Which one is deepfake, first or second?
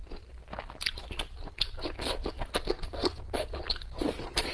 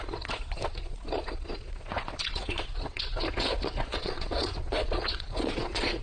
second